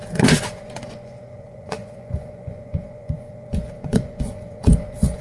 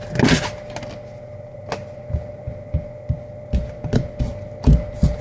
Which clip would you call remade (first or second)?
first